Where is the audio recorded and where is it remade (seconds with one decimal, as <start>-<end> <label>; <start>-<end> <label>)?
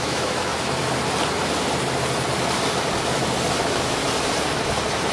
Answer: 0.0-0.5 remade; 0.5-3.6 recorded; 3.6-4.0 remade; 4.0-5.1 recorded